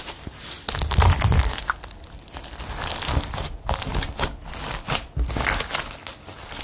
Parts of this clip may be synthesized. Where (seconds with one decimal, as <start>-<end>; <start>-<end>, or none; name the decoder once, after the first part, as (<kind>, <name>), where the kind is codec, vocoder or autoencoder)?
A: none